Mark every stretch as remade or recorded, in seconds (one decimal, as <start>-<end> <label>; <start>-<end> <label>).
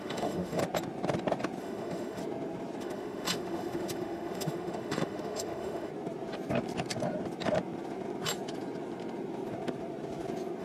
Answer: 0.0-0.6 remade; 0.6-1.6 recorded; 1.6-2.2 remade; 2.2-2.8 recorded; 2.8-5.9 remade; 5.9-10.6 recorded